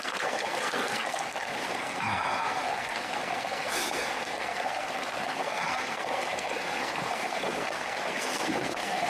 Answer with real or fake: fake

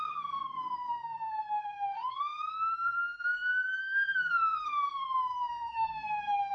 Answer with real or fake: fake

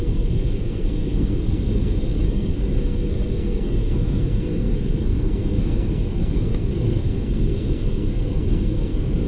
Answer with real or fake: fake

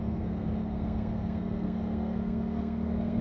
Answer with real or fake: fake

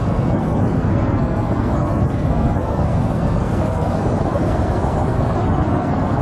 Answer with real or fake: fake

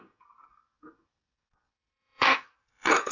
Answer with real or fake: fake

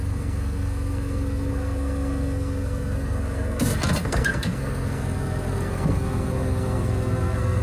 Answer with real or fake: fake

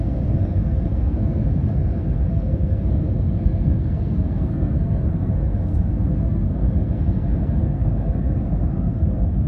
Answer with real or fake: fake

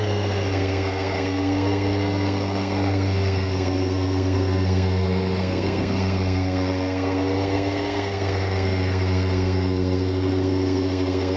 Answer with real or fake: fake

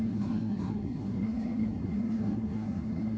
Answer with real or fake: fake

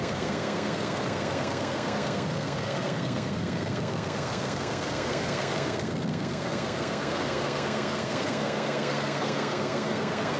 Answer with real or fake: fake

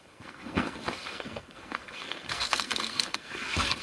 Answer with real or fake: fake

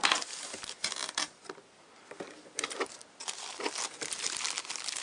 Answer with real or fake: real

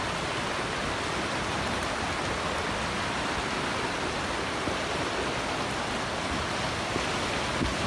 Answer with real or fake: real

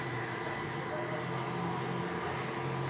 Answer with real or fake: real